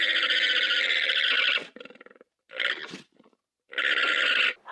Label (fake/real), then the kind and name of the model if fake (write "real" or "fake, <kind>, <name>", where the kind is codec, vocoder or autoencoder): real